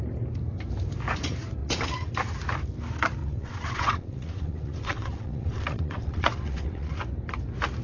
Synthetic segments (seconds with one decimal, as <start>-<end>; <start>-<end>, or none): 1.6-2.1; 3.2-7.0